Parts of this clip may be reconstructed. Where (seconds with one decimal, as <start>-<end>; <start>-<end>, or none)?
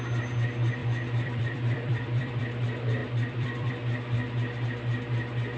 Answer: 0.8-2.4; 3.0-3.7